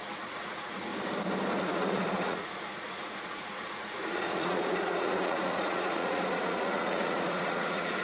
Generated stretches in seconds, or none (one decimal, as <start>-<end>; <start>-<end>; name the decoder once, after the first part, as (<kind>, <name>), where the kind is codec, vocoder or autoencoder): 0.0-0.9 (vocoder, Vocos); 1.6-8.0